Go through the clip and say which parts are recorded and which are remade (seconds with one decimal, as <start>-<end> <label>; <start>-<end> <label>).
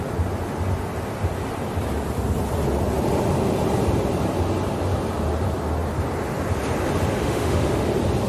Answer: 0.0-7.2 recorded; 7.2-7.9 remade; 7.9-8.3 recorded